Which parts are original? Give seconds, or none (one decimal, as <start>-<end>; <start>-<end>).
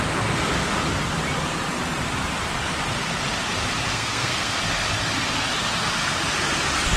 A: 0.0-3.9; 4.6-7.0